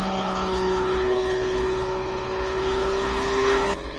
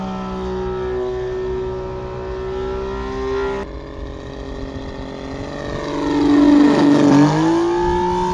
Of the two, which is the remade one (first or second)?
first